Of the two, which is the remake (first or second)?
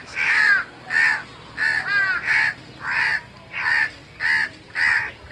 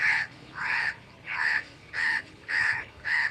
second